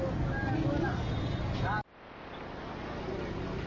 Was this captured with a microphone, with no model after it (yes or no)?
yes